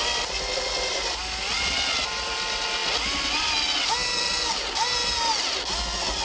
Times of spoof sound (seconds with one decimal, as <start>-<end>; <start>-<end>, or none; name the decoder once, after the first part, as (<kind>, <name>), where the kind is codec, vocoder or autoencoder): none